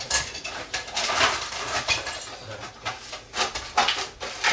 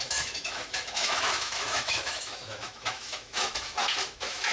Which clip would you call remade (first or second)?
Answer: second